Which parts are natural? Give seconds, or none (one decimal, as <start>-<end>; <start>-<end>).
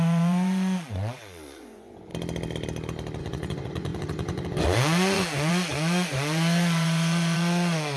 2.1-3.2